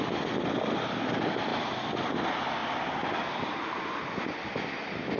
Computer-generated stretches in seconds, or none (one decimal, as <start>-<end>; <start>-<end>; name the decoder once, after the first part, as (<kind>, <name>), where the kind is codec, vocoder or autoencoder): none